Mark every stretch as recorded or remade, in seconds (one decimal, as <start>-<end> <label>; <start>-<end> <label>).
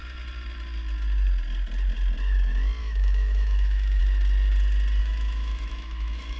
0.0-2.8 recorded; 2.8-4.0 remade; 4.0-5.0 recorded; 5.0-6.4 remade